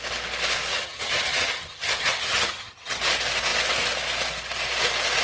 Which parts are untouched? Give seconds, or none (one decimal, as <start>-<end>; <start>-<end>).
0.0-0.7; 3.0-5.2

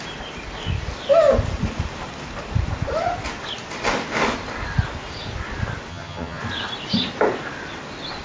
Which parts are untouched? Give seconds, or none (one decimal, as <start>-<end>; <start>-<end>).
0.0-5.9; 6.4-8.2

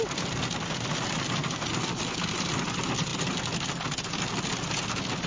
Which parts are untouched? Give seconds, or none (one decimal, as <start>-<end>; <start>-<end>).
0.0-5.3

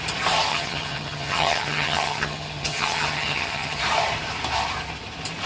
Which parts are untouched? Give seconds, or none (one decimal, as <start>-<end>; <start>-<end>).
0.0-0.5; 3.8-5.5